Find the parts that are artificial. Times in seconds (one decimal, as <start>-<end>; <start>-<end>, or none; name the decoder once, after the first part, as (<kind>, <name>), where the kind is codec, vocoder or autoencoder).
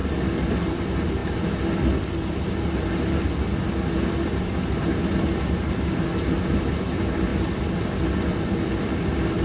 none